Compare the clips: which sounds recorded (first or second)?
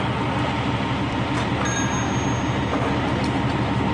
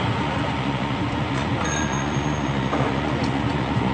first